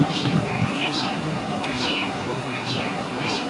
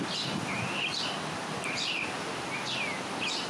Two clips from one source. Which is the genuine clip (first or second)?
second